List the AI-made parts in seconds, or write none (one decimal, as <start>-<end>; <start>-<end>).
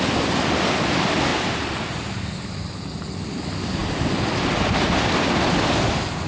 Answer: 1.3-2.2